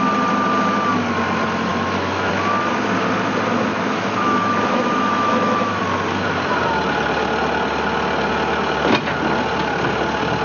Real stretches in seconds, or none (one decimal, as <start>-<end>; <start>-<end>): 0.0-1.7; 2.3-3.7; 5.8-10.4